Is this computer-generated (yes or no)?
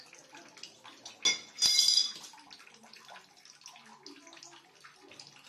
no